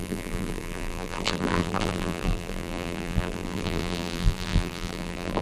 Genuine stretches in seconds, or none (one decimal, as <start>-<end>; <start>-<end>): none